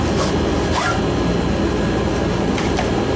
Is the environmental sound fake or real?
real